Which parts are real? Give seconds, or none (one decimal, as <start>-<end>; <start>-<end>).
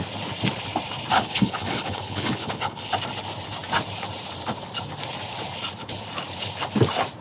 0.0-1.1; 2.9-7.2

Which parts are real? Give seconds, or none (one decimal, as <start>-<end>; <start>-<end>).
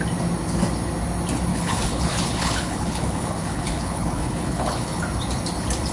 0.0-1.5; 5.0-5.9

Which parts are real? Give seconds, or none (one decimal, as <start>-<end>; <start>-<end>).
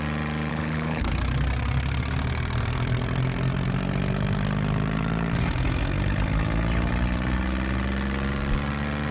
0.0-0.5; 1.1-9.1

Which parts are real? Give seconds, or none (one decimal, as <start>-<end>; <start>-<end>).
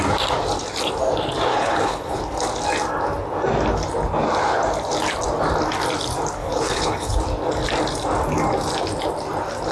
0.0-1.5; 2.2-6.4; 7.2-9.7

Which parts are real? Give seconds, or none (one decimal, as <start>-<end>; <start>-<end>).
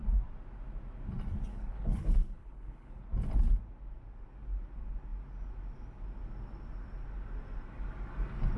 0.0-1.5; 3.0-8.6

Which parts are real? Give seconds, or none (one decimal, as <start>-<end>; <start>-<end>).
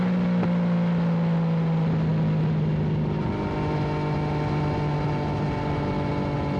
0.0-6.6